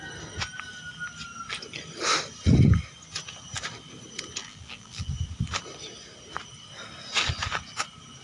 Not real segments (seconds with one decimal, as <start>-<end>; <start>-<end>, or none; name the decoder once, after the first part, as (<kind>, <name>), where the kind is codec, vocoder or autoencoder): 4.4-5.1 (vocoder, BigVGAN v2)